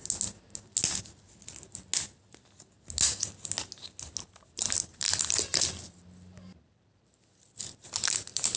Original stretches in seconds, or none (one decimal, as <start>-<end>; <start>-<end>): 0.0-1.0; 1.9-4.3